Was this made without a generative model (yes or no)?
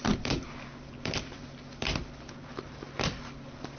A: yes